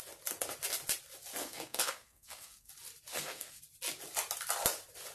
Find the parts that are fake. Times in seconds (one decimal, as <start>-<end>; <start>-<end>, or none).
1.4-2.7; 3.1-3.6